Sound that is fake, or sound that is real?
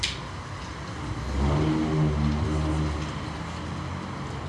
real